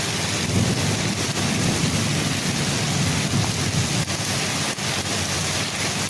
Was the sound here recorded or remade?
recorded